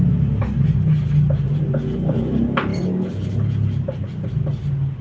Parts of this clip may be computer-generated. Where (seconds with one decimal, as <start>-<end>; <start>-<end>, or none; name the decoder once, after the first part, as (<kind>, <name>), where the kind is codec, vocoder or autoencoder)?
none